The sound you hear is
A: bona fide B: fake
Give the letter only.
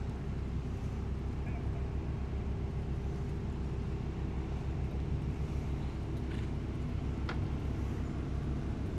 A